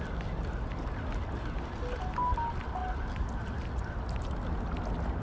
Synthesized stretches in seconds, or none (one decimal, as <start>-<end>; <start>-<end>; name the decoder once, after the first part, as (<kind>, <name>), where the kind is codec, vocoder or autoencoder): none